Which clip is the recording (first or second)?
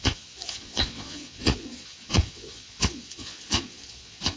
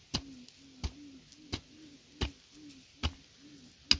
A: second